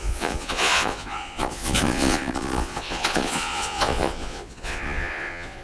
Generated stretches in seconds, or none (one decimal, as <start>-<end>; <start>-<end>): 0.0-5.6